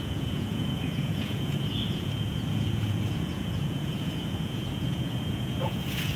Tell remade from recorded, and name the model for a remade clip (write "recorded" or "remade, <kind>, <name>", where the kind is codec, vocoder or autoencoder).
remade, vocoder, Vocos